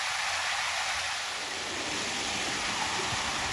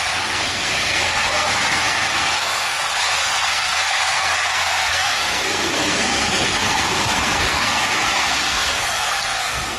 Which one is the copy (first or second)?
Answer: second